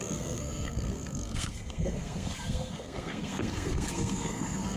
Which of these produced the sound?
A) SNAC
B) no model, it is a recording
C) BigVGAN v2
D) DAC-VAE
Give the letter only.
A